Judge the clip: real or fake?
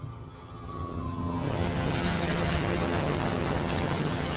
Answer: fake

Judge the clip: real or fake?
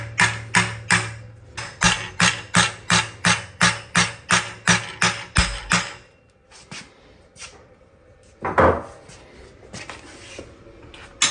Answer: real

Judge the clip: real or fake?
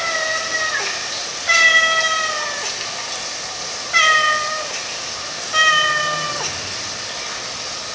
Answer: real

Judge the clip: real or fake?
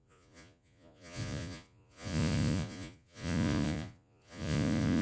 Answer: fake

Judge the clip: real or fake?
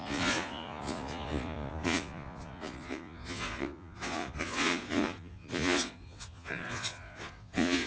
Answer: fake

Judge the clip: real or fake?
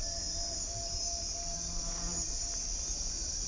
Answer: real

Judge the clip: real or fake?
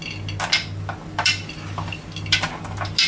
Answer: real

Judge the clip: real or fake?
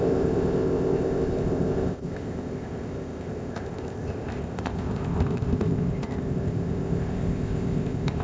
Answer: fake